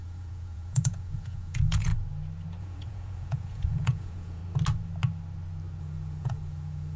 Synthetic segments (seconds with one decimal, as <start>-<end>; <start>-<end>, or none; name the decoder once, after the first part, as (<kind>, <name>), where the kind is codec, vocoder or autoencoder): 0.0-1.9 (vocoder, Vocos); 2.6-4.4; 5.8-7.0